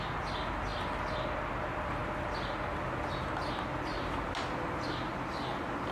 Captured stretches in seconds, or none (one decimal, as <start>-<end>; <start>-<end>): 0.0-5.9